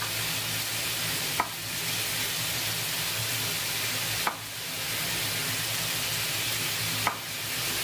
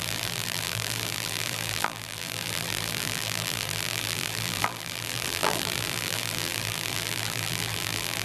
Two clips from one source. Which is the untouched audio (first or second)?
first